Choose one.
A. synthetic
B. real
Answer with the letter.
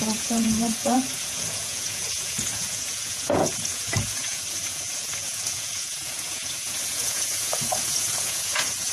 A